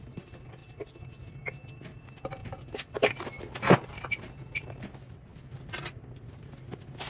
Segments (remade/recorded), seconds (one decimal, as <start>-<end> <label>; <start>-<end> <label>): 0.0-7.1 recorded